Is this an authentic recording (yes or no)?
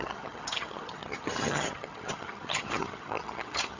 no